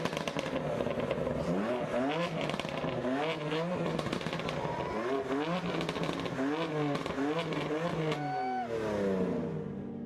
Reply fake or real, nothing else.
real